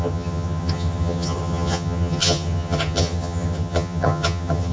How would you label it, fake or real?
fake